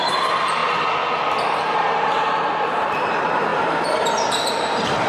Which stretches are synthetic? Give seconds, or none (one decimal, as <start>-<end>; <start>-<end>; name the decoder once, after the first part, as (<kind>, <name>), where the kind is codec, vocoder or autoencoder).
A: 0.0-0.6 (vocoder, BigVGAN v2); 1.4-5.1